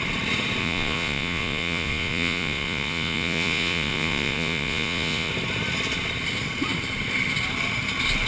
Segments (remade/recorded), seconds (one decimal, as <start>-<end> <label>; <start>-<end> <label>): 0.0-0.6 recorded; 0.6-5.3 remade; 5.3-8.3 recorded